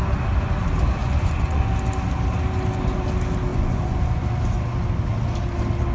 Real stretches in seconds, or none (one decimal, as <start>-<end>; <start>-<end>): 0.0-1.0; 1.6-3.5; 4.3-5.9